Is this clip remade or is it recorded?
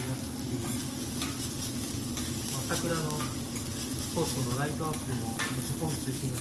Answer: recorded